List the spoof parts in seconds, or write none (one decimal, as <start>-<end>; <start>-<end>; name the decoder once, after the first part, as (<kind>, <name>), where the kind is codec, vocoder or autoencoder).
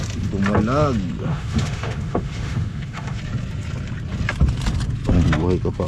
1.3-3.2 (autoencoder, DAC-VAE)